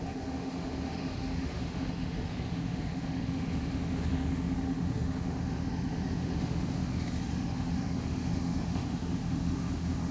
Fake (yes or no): yes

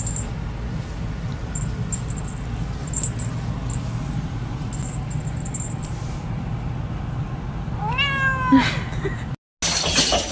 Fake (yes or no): no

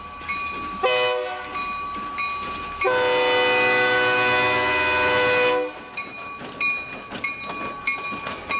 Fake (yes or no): no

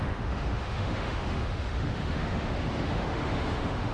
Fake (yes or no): yes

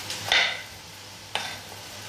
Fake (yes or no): no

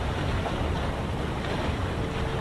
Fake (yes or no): no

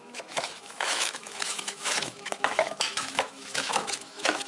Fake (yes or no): yes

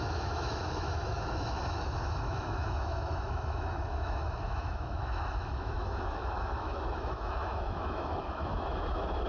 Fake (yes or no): yes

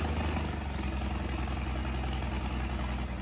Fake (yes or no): no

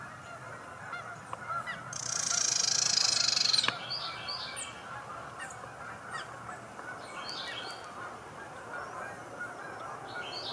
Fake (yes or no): no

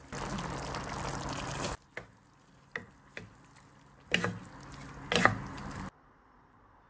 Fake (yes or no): no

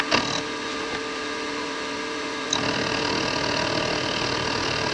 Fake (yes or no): no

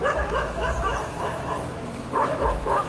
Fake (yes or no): yes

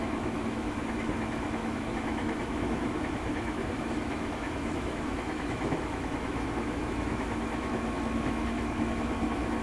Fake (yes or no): yes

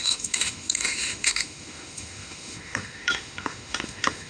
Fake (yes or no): yes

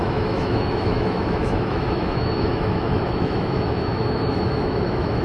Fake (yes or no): yes